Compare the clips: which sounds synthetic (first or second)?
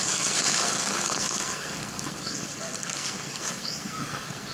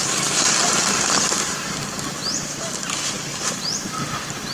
first